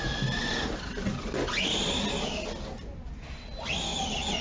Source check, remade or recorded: recorded